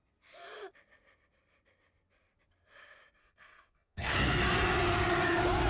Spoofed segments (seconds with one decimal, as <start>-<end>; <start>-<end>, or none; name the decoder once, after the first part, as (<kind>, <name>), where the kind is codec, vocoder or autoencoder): 3.2-4.4 (codec, SNAC)

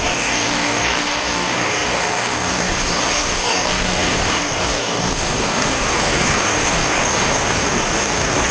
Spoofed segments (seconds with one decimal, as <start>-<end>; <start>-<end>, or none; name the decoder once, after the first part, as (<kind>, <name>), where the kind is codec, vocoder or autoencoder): 0.0-8.5 (codec, DAC)